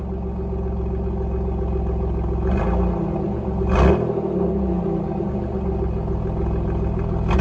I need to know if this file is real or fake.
real